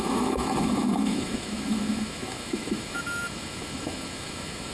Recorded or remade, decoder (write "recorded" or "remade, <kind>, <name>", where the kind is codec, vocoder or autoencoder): remade, autoencoder, DAC-VAE